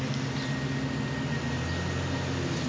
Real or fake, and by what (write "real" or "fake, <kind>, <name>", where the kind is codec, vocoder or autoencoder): real